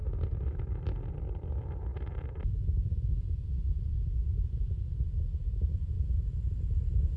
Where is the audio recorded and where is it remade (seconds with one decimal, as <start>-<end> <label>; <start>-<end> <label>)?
0.0-0.6 remade; 0.6-7.2 recorded